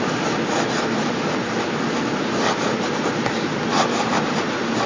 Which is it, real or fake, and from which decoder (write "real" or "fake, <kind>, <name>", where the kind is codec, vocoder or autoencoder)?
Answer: real